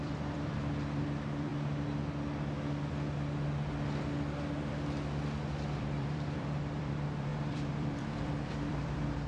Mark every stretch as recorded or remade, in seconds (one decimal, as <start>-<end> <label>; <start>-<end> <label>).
0.0-1.5 remade; 1.5-5.8 recorded; 5.8-9.3 remade